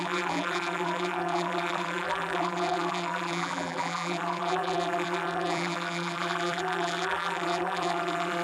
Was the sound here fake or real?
fake